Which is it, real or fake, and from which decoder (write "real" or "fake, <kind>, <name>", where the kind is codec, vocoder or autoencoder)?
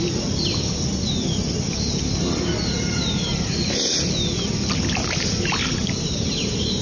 real